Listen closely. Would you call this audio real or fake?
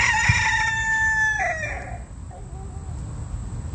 real